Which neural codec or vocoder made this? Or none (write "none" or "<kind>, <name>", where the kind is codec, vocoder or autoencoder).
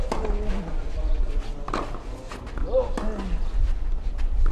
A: none